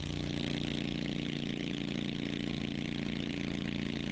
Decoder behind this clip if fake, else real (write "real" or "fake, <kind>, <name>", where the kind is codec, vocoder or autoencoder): real